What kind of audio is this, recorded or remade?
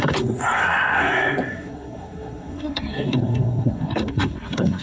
remade